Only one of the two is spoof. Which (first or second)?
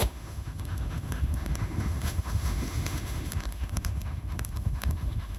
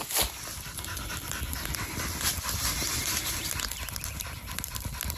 first